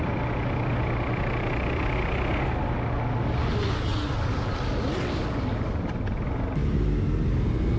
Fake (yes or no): no